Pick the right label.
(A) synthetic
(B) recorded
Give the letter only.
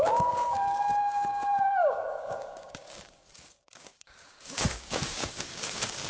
A